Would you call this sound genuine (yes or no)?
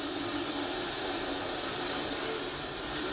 yes